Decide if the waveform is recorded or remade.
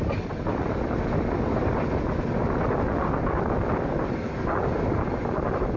recorded